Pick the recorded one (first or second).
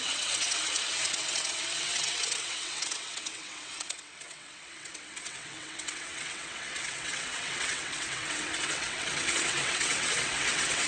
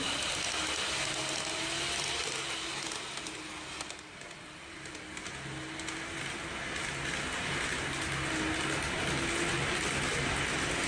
second